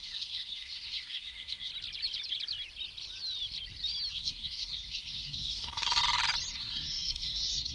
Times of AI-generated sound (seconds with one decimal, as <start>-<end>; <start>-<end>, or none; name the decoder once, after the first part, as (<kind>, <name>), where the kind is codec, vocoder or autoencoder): 0.0-1.7 (codec, SNAC); 4.1-6.0; 6.5-7.7